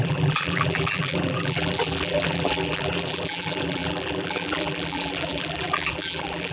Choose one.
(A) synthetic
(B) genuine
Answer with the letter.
A